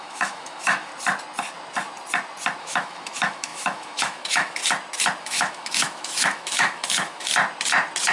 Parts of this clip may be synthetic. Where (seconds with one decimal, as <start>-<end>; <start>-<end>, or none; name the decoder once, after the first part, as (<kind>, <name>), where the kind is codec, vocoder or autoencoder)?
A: 0.0-0.9 (autoencoder, DAC-VAE); 2.6-4.6; 5.2-7.3